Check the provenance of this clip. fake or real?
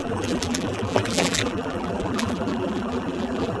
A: fake